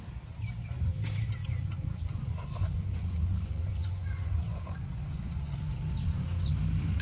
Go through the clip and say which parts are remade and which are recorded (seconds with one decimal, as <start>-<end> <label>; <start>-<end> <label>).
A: 0.0-1.4 recorded; 1.4-5.6 remade; 5.6-7.0 recorded